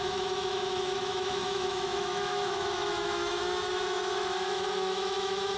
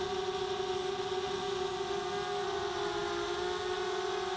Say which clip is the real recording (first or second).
second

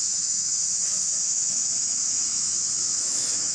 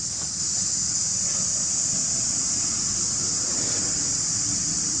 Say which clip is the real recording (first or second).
second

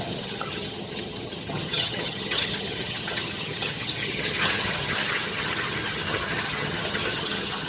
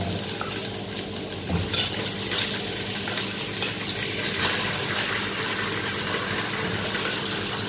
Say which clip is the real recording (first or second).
second